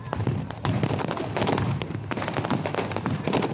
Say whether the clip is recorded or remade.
recorded